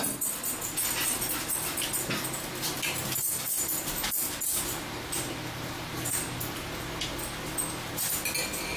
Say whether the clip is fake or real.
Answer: real